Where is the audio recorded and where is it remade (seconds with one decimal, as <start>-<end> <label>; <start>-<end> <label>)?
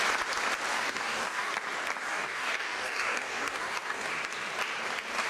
0.0-0.7 recorded; 0.7-1.5 remade; 1.5-2.1 recorded; 2.1-4.1 remade; 4.1-5.3 recorded